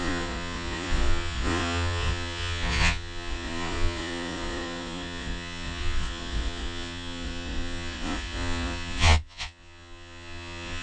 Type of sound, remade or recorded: remade